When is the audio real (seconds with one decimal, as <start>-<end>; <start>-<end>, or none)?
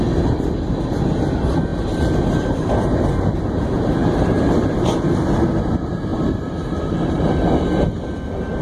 0.0-4.0; 4.8-6.1; 7.2-8.6